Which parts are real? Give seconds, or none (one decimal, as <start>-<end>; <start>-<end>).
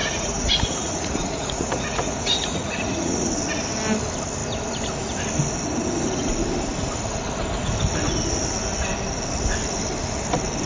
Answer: 3.3-10.7